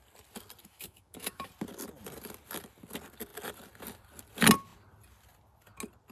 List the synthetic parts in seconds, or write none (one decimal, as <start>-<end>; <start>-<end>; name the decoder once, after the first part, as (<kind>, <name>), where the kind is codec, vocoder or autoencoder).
0.6-1.5 (autoencoder, DAC-VAE)